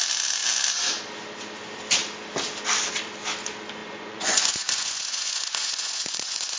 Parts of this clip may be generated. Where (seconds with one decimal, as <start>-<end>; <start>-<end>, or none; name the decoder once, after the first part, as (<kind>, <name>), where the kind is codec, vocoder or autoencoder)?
3.8-6.6 (vocoder, Vocos)